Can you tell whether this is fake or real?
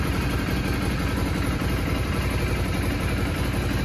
real